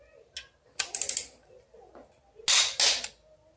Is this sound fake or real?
real